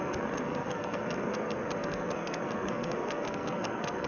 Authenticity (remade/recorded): remade